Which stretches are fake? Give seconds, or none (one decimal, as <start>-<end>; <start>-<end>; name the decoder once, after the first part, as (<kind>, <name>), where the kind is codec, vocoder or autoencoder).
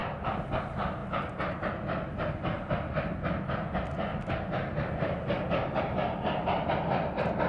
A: 4.1-6.6 (vocoder, BigVGAN v2)